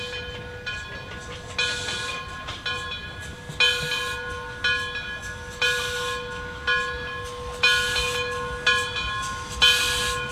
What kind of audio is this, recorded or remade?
recorded